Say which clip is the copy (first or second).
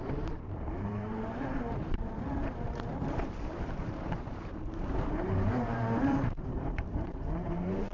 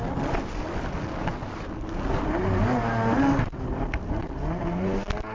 first